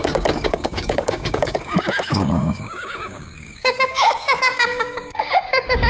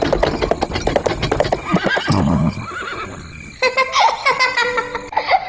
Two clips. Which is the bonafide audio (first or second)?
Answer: second